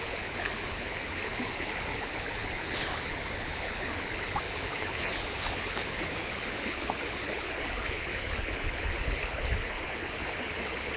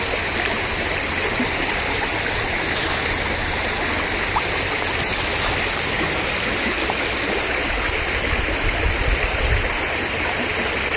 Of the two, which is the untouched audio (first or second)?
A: second